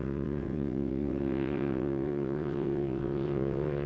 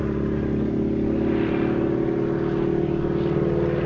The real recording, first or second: second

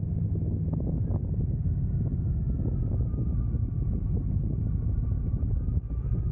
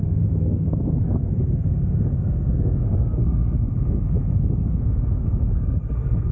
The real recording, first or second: first